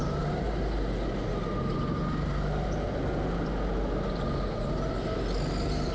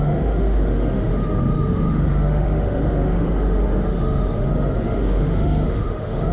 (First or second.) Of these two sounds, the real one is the first